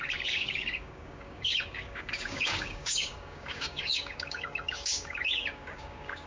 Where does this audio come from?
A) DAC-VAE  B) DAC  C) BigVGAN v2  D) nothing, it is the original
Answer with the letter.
B